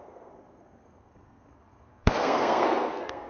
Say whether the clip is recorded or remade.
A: remade